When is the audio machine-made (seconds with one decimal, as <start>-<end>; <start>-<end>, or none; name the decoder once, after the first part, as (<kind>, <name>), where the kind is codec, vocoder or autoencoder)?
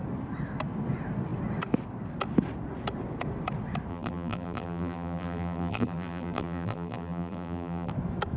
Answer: 3.9-7.9 (vocoder, BigVGAN v2)